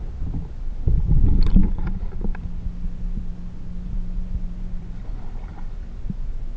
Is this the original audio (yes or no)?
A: yes